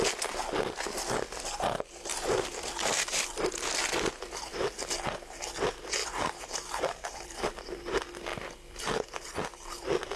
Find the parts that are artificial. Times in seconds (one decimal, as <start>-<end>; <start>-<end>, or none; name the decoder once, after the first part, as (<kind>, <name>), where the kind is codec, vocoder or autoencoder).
6.0-7.5 (vocoder, BigVGAN v2)